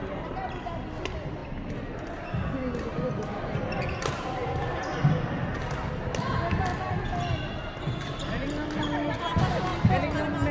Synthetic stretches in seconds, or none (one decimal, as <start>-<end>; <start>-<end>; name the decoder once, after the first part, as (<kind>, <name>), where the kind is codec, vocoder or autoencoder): none